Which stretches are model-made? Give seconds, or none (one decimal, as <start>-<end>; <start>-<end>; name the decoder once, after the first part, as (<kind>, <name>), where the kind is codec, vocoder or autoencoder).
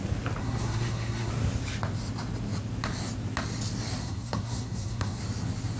0.4-1.3 (codec, SNAC); 4.0-5.2